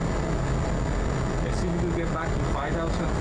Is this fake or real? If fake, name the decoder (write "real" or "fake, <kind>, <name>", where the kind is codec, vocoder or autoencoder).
real